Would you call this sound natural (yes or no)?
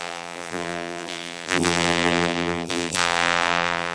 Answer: no